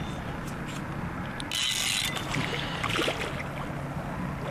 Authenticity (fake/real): real